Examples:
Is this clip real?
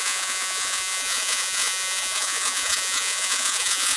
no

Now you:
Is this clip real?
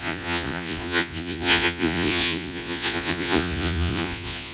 no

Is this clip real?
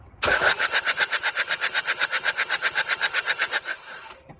yes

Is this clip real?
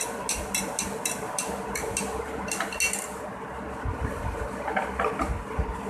yes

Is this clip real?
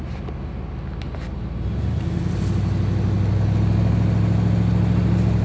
yes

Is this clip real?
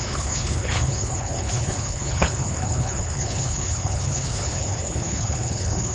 no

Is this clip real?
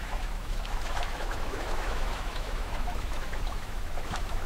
no